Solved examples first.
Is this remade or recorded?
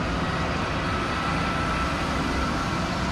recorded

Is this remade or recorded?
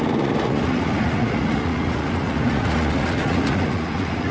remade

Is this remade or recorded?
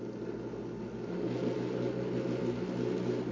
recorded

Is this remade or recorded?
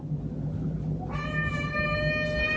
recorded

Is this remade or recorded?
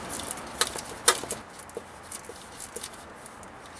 recorded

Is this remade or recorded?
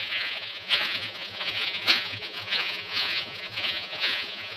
remade